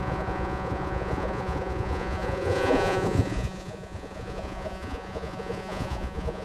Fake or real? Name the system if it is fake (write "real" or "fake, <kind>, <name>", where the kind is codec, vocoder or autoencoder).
fake, vocoder, Vocos